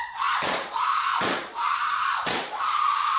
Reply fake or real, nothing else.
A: fake